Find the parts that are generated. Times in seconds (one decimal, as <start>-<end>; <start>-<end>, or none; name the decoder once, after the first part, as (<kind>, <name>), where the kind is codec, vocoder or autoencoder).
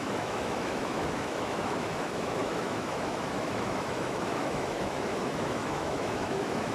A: 0.0-6.7 (autoencoder, DAC-VAE)